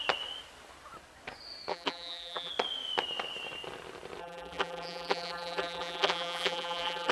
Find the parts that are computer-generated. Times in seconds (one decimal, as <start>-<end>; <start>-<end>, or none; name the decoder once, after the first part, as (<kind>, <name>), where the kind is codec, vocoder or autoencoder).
1.7-2.5 (vocoder, BigVGAN v2); 4.2-7.1